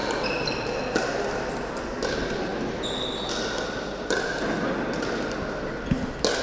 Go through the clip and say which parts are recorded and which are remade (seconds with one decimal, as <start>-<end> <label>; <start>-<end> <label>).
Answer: 0.0-6.4 recorded